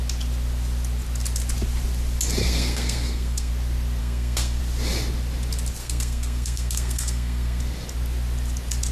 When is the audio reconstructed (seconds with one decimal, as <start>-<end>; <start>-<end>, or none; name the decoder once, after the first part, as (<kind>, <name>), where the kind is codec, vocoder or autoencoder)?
2.4-3.5 (codec, SNAC); 4.0-4.6; 5.8-7.6

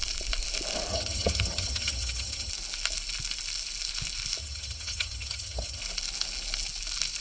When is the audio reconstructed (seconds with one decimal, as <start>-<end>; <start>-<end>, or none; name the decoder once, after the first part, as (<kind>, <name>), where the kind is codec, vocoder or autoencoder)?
0.9-2.5 (vocoder, HiFi-GAN); 4.4-5.8

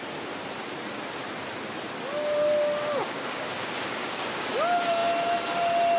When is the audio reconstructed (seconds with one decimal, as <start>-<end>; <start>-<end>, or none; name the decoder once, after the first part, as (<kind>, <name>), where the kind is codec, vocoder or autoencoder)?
3.0-4.5 (codec, DAC)

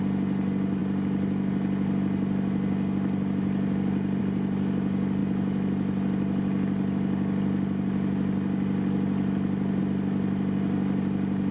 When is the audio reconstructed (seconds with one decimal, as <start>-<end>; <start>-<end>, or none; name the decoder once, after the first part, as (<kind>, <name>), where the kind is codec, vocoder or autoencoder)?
none

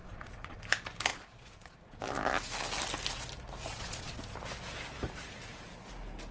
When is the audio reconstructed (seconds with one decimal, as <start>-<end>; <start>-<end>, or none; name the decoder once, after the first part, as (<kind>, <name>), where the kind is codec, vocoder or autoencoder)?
0.0-0.6 (vocoder, Vocos); 1.1-2.0; 3.7-4.2

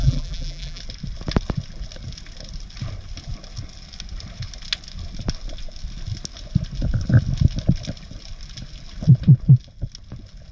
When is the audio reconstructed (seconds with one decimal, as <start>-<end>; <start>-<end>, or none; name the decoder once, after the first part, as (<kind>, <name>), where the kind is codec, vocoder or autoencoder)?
0.0-0.8 (vocoder, BigVGAN v2)

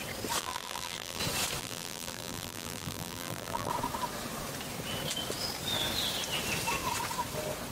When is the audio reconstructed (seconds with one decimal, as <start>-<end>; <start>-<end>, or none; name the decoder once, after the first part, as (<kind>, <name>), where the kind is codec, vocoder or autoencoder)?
0.4-1.2 (vocoder, BigVGAN v2); 1.6-3.7